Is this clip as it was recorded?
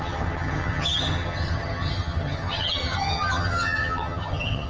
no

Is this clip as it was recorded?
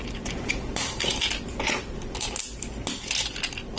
yes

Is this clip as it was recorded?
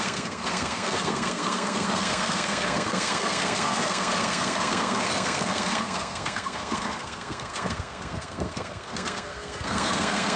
no